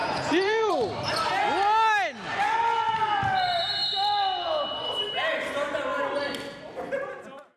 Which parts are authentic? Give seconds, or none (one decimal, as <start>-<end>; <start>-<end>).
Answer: 0.7-7.6